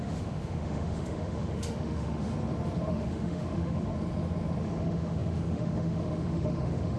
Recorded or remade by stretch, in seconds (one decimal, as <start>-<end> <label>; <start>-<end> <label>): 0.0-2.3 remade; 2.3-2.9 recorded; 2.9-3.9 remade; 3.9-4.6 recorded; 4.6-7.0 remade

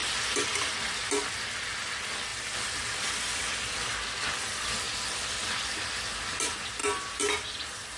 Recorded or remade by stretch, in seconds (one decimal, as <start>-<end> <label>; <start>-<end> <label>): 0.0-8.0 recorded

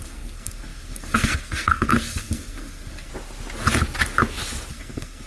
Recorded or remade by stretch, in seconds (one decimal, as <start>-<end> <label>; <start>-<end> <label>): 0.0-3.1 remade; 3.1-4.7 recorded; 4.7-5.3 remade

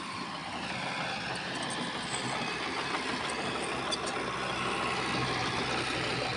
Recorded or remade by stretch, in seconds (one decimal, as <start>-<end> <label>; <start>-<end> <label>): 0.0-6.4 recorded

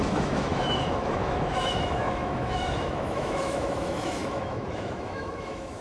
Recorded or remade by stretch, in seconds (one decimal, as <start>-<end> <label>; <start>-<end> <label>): 0.0-5.8 remade